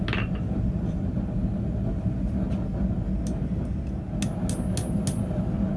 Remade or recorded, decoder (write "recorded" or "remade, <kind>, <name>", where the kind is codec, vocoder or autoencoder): recorded